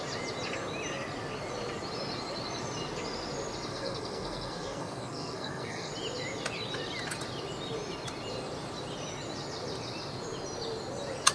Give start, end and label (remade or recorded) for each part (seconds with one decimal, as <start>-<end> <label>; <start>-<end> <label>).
0.0-3.7 recorded; 3.7-5.9 remade; 5.9-11.3 recorded